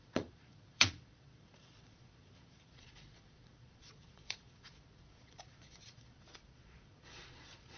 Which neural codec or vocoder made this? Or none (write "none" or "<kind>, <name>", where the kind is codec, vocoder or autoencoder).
vocoder, Vocos